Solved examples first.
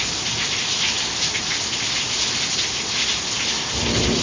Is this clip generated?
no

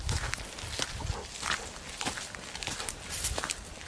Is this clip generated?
no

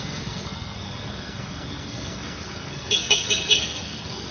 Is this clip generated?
yes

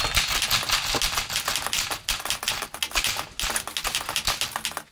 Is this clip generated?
no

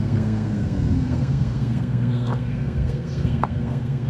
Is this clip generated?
yes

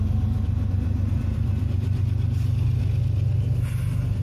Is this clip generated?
no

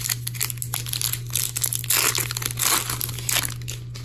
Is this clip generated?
no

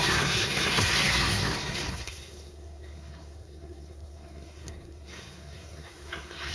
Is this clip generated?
yes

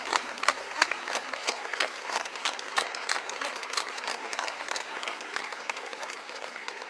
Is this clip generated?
yes